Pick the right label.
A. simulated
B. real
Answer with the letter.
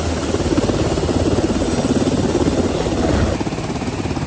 B